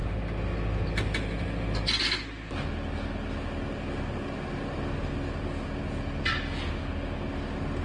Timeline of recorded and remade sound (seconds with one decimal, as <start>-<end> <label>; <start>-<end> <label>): 0.0-7.8 recorded